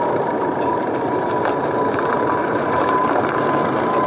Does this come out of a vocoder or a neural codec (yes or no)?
yes